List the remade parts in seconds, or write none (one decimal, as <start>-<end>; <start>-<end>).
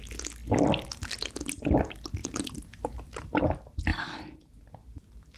2.2-3.4; 3.9-4.5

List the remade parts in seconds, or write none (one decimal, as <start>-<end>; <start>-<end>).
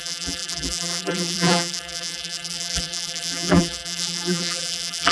0.0-5.1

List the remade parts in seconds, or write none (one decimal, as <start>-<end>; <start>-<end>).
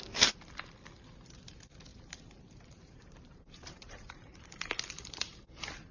1.9-5.4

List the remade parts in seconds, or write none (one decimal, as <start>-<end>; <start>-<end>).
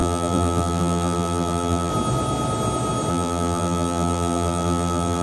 0.0-1.9; 3.1-5.2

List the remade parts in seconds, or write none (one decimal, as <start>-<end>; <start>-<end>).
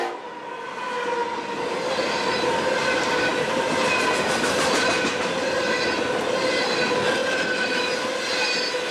1.2-2.0; 3.3-5.0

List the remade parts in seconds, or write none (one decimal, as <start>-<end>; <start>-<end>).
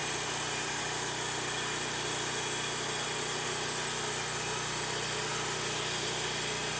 0.0-0.8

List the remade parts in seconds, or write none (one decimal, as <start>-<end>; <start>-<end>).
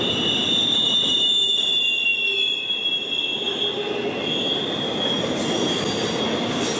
none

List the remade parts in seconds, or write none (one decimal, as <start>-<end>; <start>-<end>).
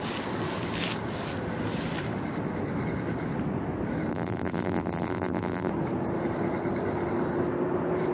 4.1-5.7